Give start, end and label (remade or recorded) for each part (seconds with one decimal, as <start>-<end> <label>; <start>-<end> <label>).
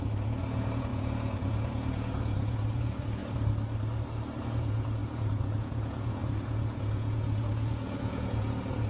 0.0-3.2 remade; 3.2-4.4 recorded; 4.4-8.9 remade